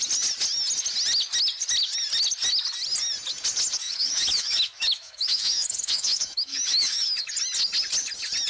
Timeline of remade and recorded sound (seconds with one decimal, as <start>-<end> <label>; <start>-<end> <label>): 0.0-3.8 recorded; 3.8-7.3 remade; 7.3-8.5 recorded